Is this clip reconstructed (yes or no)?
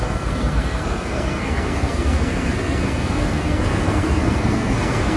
yes